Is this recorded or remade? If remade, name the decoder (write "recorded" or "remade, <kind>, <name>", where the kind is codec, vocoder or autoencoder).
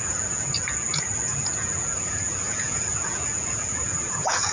remade, vocoder, Vocos